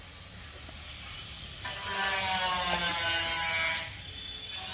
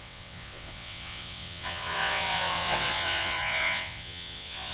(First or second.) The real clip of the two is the first